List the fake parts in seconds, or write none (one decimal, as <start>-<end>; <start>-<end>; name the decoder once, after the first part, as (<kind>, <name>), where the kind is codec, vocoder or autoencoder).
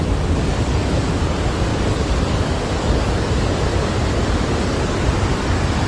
0.5-1.1 (codec, DAC); 1.7-3.5